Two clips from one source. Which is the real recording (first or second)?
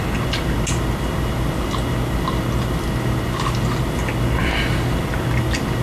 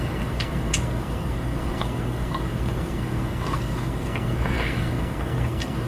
first